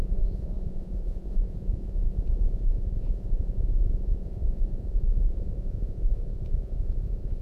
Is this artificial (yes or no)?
yes